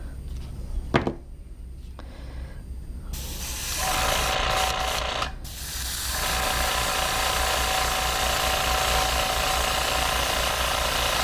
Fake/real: real